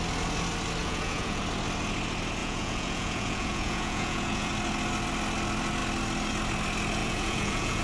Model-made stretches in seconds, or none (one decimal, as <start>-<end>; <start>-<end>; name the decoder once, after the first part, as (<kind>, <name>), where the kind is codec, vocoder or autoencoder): 0.8-1.4 (vocoder, Vocos); 2.4-4.5; 7.0-7.8